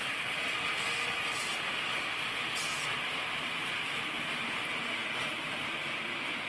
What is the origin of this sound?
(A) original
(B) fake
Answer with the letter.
A